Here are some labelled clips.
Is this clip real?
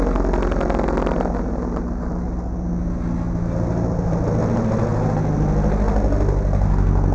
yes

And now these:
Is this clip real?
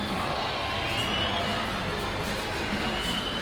yes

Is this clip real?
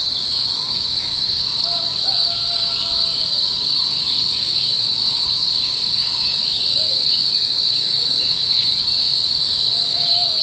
no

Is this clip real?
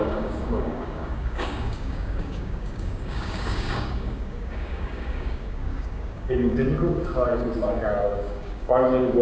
no